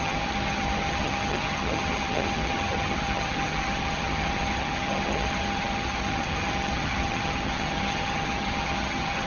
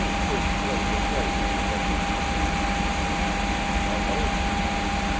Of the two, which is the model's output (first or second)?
first